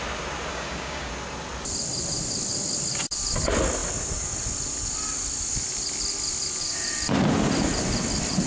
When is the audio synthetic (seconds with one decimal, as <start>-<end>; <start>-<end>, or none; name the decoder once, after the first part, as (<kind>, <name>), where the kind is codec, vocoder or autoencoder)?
0.5-1.1 (codec, DAC)

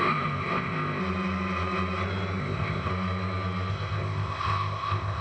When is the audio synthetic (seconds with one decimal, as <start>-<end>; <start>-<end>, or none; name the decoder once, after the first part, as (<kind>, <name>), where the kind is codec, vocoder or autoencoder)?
0.0-1.0 (codec, ZipCodec); 2.4-2.9; 3.7-5.2

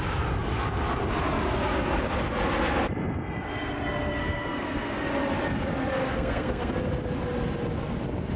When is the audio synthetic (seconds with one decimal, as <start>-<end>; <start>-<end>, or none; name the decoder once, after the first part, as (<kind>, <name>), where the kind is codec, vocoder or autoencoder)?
4.2-5.1 (codec, SNAC); 6.0-6.7

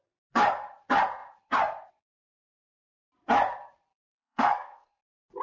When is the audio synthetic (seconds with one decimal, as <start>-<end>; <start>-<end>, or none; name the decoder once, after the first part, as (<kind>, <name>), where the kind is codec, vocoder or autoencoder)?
4.0-5.0 (codec, SNAC)

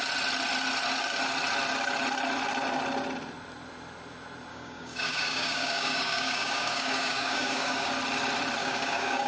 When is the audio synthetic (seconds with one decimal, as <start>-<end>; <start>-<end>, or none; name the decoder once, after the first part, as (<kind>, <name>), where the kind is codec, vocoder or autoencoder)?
4.5-7.9 (codec, DAC); 8.6-9.3

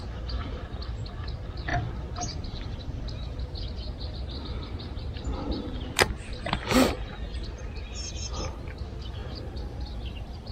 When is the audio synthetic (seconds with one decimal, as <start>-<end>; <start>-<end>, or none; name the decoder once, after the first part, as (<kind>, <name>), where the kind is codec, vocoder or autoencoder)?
1.7-3.6 (vocoder, BigVGAN v2); 9.2-10.5

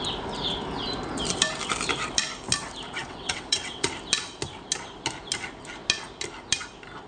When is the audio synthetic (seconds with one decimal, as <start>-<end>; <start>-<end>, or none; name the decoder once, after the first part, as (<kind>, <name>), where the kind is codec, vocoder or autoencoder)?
3.0-3.9 (vocoder, WaveNeXt)

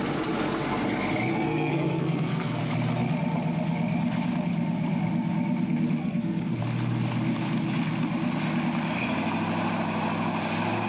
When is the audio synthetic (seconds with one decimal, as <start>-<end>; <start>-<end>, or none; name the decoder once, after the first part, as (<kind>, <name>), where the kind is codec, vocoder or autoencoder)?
1.3-2.6 (codec, SNAC); 6.0-6.6